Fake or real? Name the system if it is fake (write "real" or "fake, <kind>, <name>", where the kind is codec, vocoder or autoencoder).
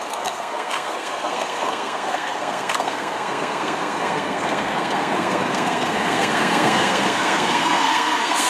fake, codec, SNAC